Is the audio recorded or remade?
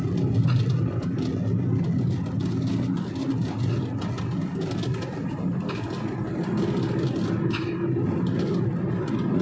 recorded